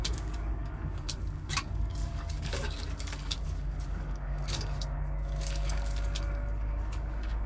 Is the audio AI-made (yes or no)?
yes